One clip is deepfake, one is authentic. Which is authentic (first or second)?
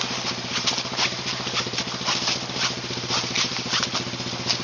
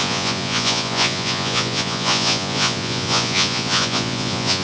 first